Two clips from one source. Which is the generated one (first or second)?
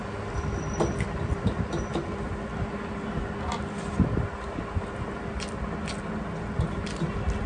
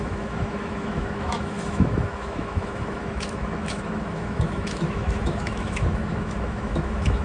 second